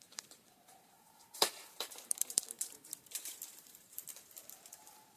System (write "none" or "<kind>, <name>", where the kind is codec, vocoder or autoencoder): vocoder, BigVGAN v2